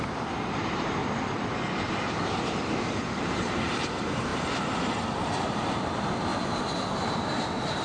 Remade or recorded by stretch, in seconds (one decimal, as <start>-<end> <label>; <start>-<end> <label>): 0.0-1.0 remade; 1.0-1.9 recorded; 1.9-4.3 remade; 4.3-5.0 recorded; 5.0-6.3 remade; 6.3-6.9 recorded; 6.9-7.8 remade